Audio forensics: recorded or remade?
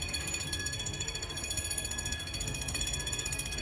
remade